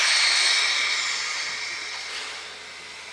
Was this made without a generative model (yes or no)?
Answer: yes